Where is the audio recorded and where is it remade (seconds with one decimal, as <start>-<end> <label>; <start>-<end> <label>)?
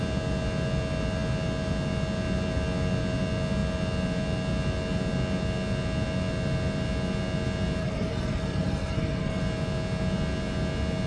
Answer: 0.0-7.8 recorded; 7.8-9.4 remade; 9.4-11.1 recorded